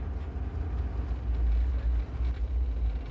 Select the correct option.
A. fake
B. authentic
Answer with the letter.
B